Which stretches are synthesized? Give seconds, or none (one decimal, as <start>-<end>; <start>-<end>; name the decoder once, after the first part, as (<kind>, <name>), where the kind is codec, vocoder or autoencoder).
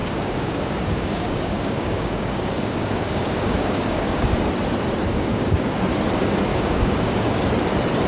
0.0-4.5 (codec, DAC); 5.1-5.8; 6.5-7.5